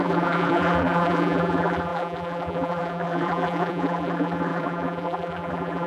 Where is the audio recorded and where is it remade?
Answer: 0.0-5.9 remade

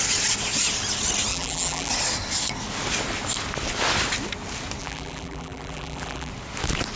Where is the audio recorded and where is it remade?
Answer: 0.0-1.3 recorded; 1.3-1.9 remade; 1.9-4.8 recorded; 4.8-6.3 remade; 6.3-7.0 recorded

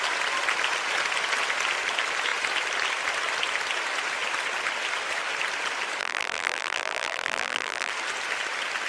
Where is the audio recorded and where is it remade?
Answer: 0.0-6.0 recorded; 6.0-7.9 remade; 7.9-8.9 recorded

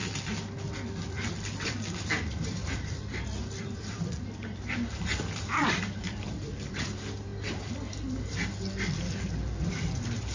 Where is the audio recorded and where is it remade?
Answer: 0.0-0.7 recorded; 0.7-7.3 remade; 7.3-9.6 recorded; 9.6-10.3 remade

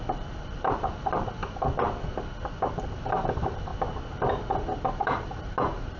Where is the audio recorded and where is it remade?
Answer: 0.0-1.4 remade; 1.4-2.7 recorded; 2.7-3.7 remade; 3.7-4.9 recorded; 4.9-6.0 remade

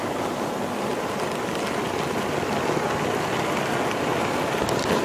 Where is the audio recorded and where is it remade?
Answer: 0.0-5.0 recorded

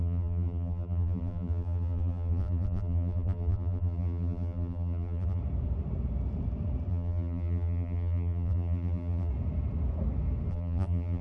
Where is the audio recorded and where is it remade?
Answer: 0.0-5.4 remade; 5.4-6.9 recorded; 6.9-9.3 remade; 9.3-10.5 recorded; 10.5-11.2 remade

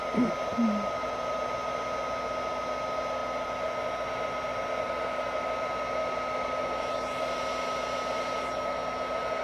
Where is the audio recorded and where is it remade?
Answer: 0.0-0.5 recorded; 0.5-1.3 remade; 1.3-9.4 recorded